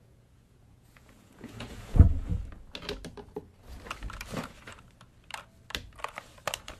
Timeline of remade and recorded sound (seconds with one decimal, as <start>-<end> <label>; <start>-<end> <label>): 0.0-2.3 remade; 2.3-6.8 recorded

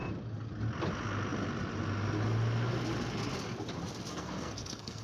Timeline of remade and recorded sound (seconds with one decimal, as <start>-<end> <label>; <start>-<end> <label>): 0.0-4.1 recorded; 4.1-5.0 remade